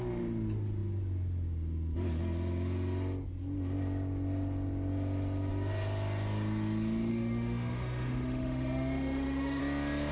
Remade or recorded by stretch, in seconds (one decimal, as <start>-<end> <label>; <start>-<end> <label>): 0.0-7.1 recorded; 7.1-9.6 remade; 9.6-10.1 recorded